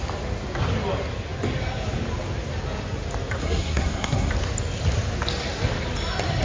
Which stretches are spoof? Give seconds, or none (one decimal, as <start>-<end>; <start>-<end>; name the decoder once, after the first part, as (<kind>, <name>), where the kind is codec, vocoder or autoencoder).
3.4-4.3 (codec, SNAC)